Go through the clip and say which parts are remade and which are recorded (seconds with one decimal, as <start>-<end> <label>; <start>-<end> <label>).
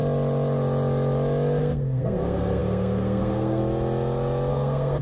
0.0-1.6 recorded; 1.6-3.6 remade; 3.6-4.5 recorded; 4.5-5.0 remade